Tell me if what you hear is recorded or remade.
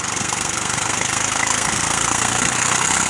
remade